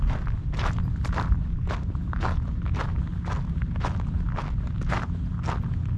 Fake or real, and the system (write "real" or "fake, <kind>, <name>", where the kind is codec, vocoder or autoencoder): real